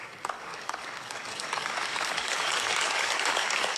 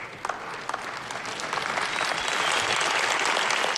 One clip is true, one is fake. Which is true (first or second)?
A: second